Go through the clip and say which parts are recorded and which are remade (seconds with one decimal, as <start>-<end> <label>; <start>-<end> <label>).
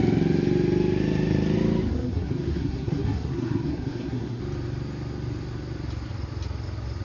0.0-1.9 recorded; 1.9-4.4 remade; 4.4-7.0 recorded